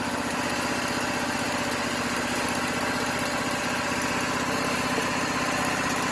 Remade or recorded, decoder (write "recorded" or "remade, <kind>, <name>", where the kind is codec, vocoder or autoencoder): recorded